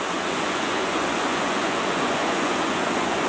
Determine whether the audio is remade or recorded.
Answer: remade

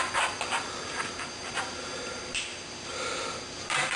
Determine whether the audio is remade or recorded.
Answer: remade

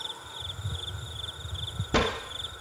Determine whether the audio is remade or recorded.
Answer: recorded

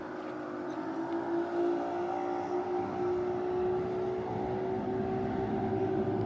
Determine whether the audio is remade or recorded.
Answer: recorded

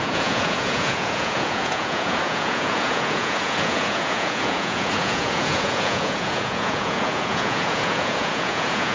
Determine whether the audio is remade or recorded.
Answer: remade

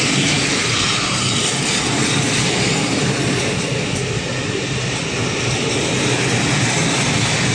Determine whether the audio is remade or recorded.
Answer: recorded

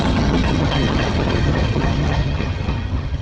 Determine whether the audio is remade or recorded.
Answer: remade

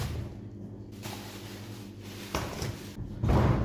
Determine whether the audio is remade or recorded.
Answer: recorded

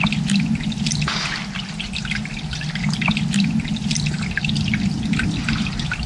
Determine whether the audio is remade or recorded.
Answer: recorded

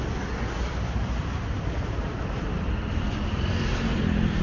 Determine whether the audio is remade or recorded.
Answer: recorded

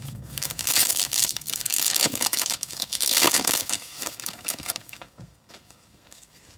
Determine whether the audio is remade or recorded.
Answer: remade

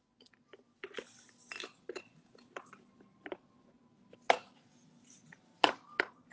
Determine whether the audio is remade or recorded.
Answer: recorded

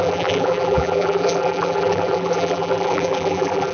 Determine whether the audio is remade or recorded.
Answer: remade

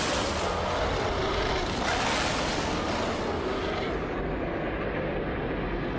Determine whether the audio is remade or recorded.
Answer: recorded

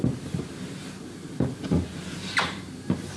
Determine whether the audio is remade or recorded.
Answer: remade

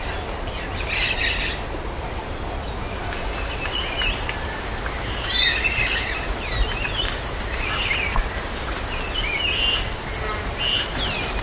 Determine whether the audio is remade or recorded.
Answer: recorded